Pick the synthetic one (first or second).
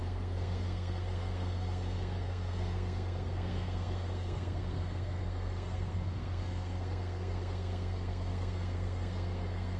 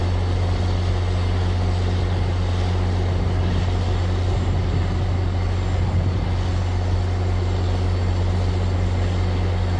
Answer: first